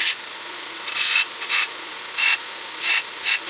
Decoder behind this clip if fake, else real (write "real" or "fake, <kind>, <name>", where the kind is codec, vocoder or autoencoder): fake, vocoder, Vocos